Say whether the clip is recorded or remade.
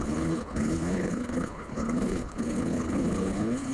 remade